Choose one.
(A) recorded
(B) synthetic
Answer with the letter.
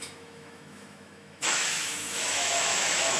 B